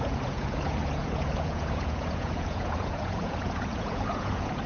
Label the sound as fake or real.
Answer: fake